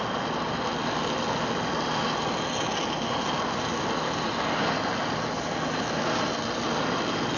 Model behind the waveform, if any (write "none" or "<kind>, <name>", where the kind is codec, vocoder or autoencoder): none